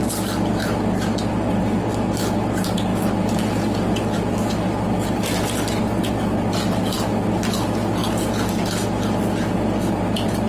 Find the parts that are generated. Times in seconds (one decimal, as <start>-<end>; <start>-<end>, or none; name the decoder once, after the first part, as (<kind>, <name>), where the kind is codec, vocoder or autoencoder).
none